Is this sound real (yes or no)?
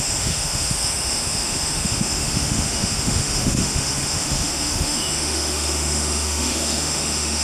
no